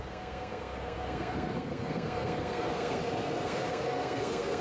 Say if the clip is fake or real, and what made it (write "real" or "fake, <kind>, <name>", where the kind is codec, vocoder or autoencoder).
fake, codec, SNAC